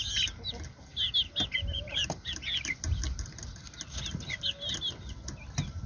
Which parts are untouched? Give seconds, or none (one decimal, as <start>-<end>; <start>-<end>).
0.0-5.9